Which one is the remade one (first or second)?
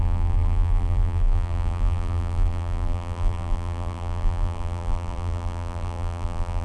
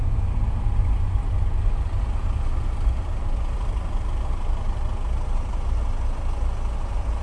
first